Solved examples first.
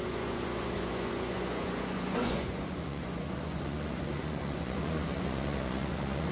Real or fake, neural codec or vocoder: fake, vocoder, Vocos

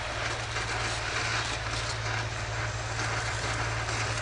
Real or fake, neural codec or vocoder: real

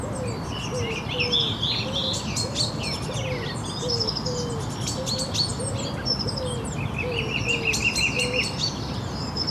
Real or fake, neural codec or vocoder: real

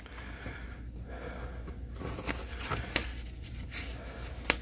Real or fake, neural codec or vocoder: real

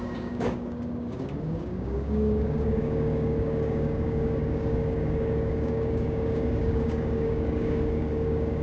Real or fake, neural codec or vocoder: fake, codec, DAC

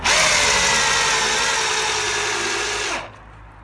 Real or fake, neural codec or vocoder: real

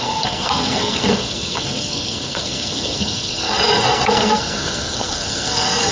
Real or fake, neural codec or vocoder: fake, codec, SNAC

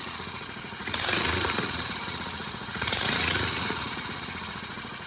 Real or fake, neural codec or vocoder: fake, vocoder, Vocos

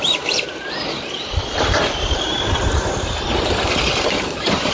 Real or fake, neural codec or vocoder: fake, vocoder, BigVGAN v2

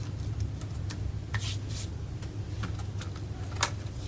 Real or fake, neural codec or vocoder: real